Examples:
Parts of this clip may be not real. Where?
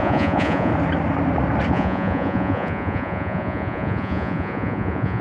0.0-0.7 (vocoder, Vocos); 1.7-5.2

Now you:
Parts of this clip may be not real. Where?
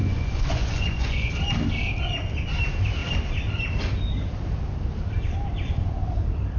0.0-1.3 (vocoder, Vocos)